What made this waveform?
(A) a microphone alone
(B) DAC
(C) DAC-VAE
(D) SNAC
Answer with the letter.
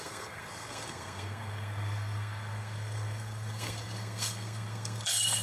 D